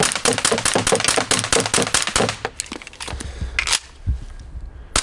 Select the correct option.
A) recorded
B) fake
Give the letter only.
A